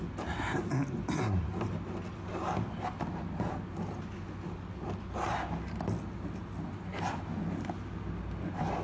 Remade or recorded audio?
recorded